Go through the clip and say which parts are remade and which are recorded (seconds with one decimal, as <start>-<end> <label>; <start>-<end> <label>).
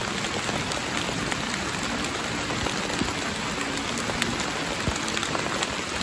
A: 0.0-6.0 recorded